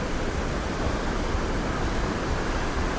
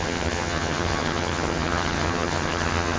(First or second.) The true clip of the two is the first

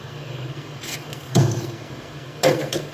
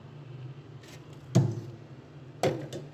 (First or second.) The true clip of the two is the second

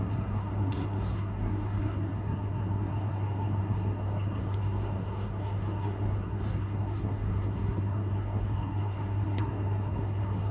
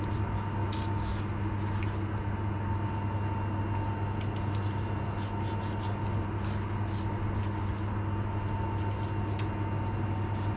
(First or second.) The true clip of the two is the second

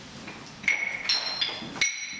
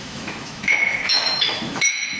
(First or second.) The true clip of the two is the first